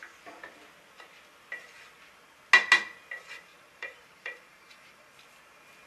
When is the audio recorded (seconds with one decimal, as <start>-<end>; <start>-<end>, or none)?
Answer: 0.0-3.5; 5.1-5.9